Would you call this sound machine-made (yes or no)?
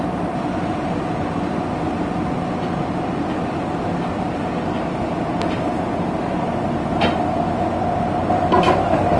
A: no